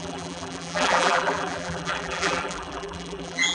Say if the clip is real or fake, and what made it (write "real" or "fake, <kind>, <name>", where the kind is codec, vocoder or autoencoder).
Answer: fake, vocoder, BigVGAN v2